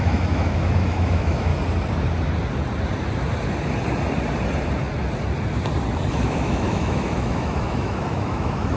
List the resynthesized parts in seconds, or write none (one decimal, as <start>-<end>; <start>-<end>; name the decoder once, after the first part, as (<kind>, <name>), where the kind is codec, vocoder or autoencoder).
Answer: 0.0-1.5 (autoencoder, DAC-VAE); 6.1-8.8